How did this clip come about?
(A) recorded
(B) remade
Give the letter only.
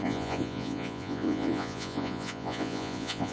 B